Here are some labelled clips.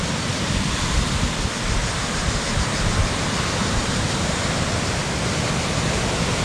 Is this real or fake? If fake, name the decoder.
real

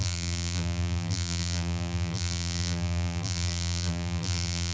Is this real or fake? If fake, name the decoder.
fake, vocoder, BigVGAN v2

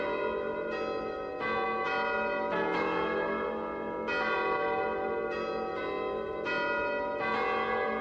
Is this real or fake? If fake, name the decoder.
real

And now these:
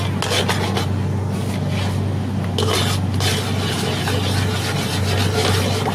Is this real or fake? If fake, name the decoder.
real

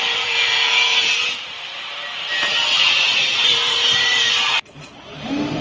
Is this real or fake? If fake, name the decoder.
fake, vocoder, BigVGAN v2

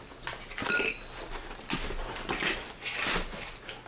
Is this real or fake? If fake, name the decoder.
real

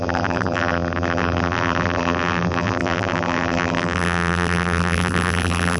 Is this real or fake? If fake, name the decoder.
fake, vocoder, BigVGAN v2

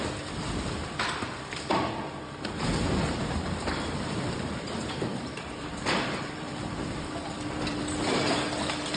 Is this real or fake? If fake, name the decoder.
fake, vocoder, BigVGAN v2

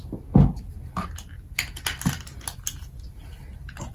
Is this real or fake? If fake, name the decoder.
real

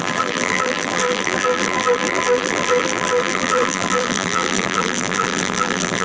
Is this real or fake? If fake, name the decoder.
fake, vocoder, BigVGAN v2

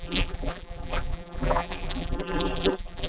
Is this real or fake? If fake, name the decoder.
fake, vocoder, BigVGAN v2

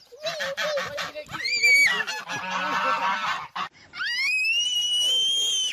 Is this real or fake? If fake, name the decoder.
real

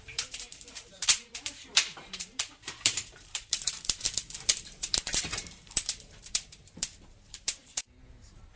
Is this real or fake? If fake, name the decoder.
fake, vocoder, BigVGAN v2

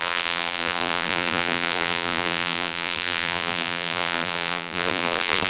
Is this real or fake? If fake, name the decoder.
fake, vocoder, BigVGAN v2